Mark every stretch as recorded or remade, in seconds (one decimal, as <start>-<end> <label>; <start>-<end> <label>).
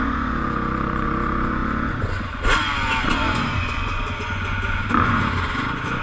0.0-6.0 remade